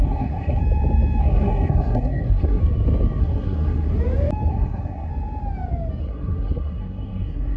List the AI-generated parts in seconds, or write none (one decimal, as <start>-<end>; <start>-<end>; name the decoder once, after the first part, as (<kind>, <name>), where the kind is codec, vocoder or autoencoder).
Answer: 0.0-0.6 (codec, SNAC); 1.2-2.6; 3.2-3.9; 4.5-5.1; 6.0-7.6